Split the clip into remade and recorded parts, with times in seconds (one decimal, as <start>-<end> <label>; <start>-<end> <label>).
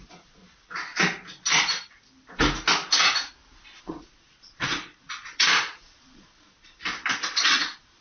0.0-0.4 remade; 0.4-3.8 recorded; 3.8-6.8 remade; 6.8-7.3 recorded; 7.3-8.0 remade